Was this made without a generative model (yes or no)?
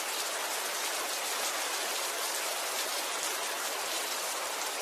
yes